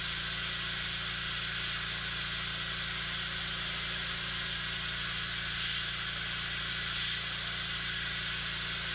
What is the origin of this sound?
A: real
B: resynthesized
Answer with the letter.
A